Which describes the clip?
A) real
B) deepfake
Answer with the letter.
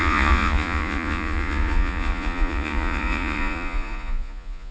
B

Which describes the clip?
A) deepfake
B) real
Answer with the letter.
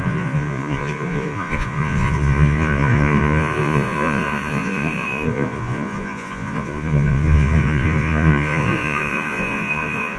A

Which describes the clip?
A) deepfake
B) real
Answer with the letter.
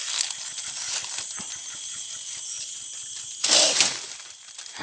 B